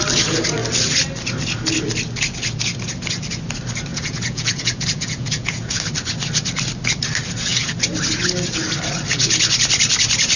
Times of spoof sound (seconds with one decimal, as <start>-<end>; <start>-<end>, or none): 3.9-5.8

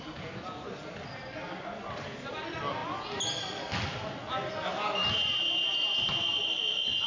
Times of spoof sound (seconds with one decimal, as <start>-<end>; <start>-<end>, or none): none

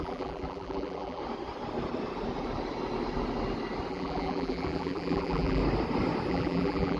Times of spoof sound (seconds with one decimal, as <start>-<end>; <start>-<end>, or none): 0.0-1.2; 3.9-5.6; 6.3-7.0

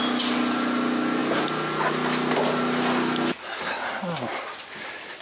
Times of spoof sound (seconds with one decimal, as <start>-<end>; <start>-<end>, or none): none

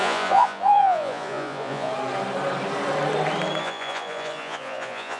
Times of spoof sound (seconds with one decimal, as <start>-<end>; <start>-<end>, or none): 0.0-1.9; 3.6-5.2

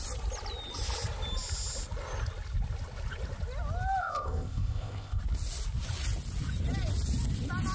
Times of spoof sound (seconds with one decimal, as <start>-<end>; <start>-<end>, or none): 4.0-5.2

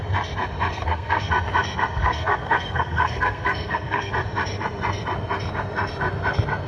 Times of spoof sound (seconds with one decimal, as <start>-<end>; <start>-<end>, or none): 0.7-1.3; 2.0-4.1

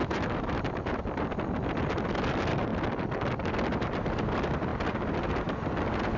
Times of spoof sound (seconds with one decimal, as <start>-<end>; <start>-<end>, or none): 0.0-0.6